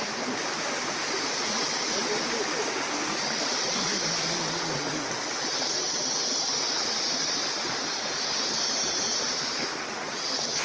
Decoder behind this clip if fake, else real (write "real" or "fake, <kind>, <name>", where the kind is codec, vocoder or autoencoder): real